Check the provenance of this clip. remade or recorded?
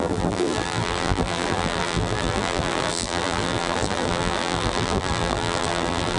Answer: remade